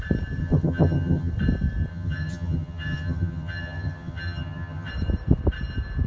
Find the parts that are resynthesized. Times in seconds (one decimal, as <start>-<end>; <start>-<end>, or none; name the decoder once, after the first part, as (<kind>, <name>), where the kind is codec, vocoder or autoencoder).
0.4-1.3 (vocoder, HiFi-GAN); 1.9-4.9